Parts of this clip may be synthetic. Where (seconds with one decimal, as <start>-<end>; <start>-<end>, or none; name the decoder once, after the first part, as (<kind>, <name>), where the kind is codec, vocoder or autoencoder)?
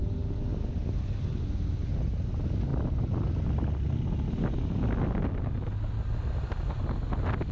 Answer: none